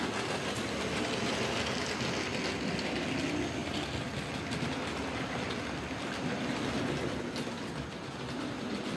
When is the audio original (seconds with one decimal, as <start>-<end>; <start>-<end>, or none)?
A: 0.0-9.0